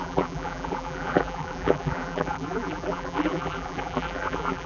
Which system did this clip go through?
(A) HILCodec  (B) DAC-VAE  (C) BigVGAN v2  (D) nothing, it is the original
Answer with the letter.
C